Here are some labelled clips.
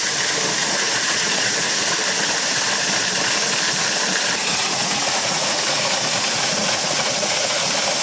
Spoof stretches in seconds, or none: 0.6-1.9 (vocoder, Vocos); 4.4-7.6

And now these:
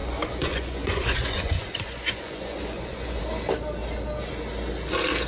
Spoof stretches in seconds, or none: 0.0-3.2 (vocoder, Vocos)

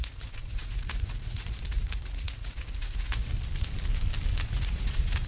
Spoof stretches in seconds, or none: 0.0-3.3 (vocoder, Vocos); 4.5-5.3

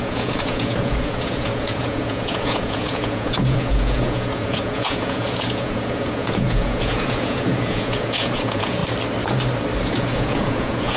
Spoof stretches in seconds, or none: 0.0-8.8 (vocoder, Vocos); 9.9-11.0

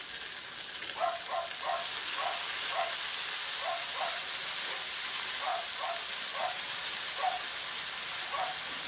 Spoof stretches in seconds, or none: none

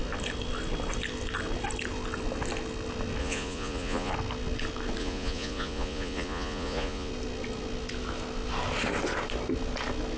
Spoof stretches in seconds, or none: 3.2-4.1 (vocoder, Vocos); 5.0-7.1

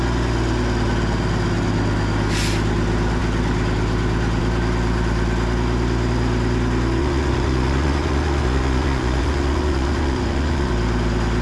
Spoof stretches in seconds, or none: 7.0-10.7 (vocoder, Vocos)

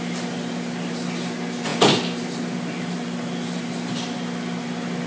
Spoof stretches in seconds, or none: none